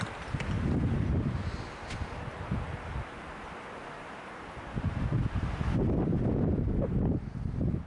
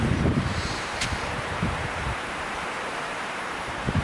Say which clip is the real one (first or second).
first